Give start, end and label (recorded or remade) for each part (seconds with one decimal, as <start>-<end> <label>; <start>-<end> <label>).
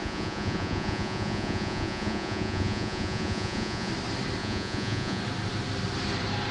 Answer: 0.0-3.9 remade; 3.9-4.4 recorded; 4.4-5.2 remade; 5.2-6.5 recorded